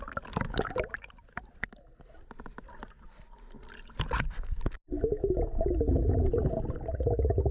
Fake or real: real